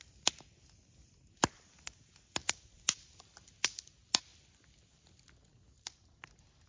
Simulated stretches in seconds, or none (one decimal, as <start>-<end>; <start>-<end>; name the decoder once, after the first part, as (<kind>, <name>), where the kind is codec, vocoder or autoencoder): none

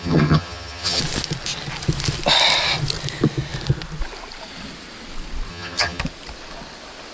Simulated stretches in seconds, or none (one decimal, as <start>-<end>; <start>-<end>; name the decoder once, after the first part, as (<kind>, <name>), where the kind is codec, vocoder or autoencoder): 0.0-1.0 (vocoder, HiFi-GAN); 5.5-6.0

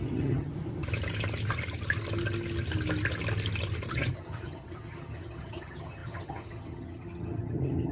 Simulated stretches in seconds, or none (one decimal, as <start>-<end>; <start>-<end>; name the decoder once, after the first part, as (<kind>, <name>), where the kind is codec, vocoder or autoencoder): 0.0-0.5 (vocoder, HiFi-GAN); 3.9-7.9

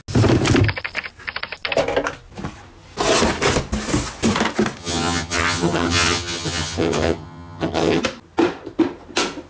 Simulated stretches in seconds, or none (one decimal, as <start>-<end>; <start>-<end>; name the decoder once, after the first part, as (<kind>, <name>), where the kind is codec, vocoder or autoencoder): 4.8-8.0 (vocoder, HiFi-GAN)